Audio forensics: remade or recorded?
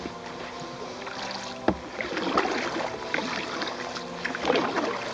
recorded